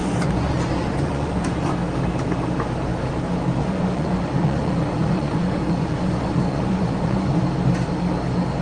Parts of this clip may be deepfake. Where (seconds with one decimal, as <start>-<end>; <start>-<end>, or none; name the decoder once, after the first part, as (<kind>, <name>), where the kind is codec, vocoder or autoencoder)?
0.0-1.7 (vocoder, Vocos); 3.6-7.4